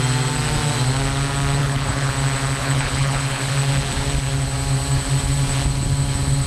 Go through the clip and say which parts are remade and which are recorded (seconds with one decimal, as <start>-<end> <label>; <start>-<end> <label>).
0.0-1.6 recorded; 1.6-2.1 remade; 2.1-2.6 recorded; 2.6-3.5 remade; 3.5-6.5 recorded